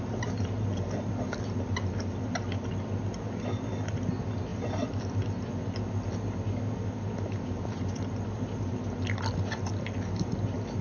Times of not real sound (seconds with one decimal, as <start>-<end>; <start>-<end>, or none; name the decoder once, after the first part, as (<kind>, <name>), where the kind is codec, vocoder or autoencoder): 4.5-5.1 (vocoder, BigVGAN v2)